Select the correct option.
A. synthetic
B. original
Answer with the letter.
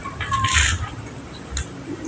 B